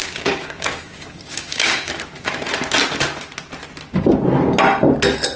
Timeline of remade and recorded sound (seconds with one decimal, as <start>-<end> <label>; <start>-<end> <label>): 0.0-1.9 remade; 1.9-5.4 recorded